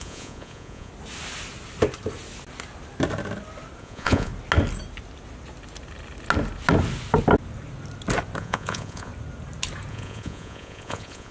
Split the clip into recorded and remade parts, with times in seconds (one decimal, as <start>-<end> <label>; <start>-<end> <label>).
0.0-0.9 remade; 0.9-3.8 recorded; 3.8-4.3 remade; 4.3-8.4 recorded; 8.4-9.1 remade; 9.1-9.9 recorded; 9.9-11.3 remade